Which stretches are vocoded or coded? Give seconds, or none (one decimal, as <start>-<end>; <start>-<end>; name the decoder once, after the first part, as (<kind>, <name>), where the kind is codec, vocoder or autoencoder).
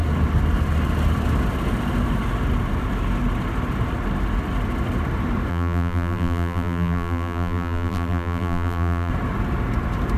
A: 5.5-9.1 (vocoder, BigVGAN v2)